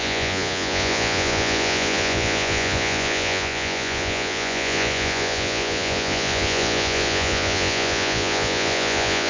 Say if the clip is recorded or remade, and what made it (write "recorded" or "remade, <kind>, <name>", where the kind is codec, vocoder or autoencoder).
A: remade, vocoder, Vocos